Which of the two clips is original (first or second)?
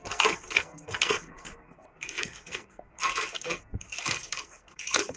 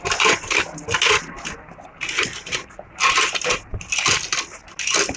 second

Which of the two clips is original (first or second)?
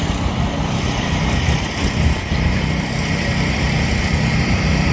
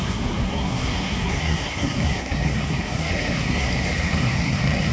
first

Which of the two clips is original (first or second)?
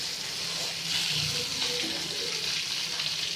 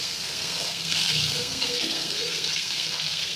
first